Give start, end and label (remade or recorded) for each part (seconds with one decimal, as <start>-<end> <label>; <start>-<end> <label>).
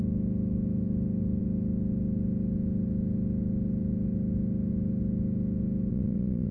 0.0-5.9 recorded; 5.9-6.5 remade